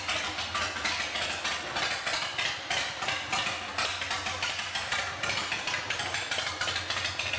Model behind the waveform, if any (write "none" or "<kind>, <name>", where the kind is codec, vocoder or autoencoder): none